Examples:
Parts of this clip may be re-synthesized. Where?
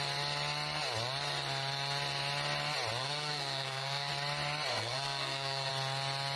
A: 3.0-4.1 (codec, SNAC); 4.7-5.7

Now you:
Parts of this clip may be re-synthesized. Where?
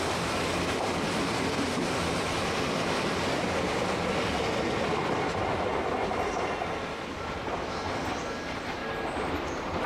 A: 0.0-5.7 (vocoder, BigVGAN v2); 6.9-8.8; 9.3-9.9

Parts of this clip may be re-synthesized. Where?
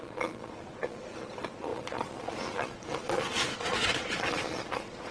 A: 0.0-5.1 (vocoder, Vocos)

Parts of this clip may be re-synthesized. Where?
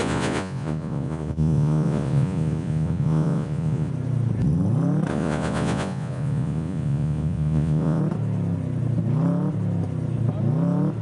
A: 0.0-3.9 (vocoder, Vocos); 5.1-8.0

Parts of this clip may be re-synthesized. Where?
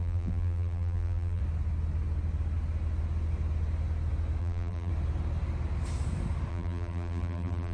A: 0.0-1.4 (vocoder, BigVGAN v2); 4.4-4.9; 6.5-7.7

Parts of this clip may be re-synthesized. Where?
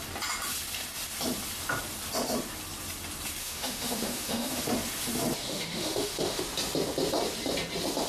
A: 3.4-4.6 (autoencoder, DAC-VAE); 5.4-6.4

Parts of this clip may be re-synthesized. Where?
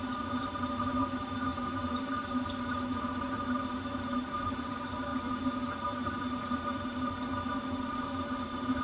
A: 0.0-8.8 (vocoder, BigVGAN v2)